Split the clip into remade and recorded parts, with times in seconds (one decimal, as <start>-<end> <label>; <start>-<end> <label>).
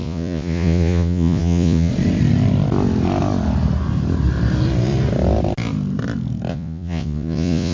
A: 0.0-1.9 remade; 1.9-6.5 recorded; 6.5-7.7 remade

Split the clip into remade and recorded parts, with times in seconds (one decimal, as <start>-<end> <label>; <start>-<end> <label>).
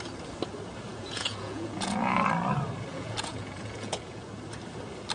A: 0.0-0.9 recorded; 0.9-2.3 remade; 2.3-2.9 recorded; 2.9-4.3 remade; 4.3-5.1 recorded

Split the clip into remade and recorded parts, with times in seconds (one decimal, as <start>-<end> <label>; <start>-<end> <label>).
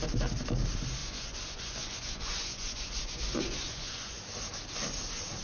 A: 0.0-1.0 recorded; 1.0-4.2 remade; 4.2-5.4 recorded